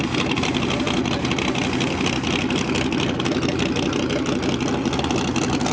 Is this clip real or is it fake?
real